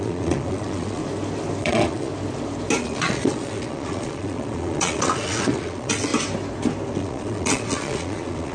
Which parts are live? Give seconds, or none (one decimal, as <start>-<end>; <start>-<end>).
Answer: 1.0-1.6; 2.1-2.8; 6.1-6.9